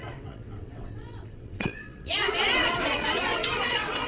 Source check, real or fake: fake